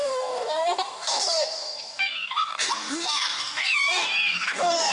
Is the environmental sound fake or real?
fake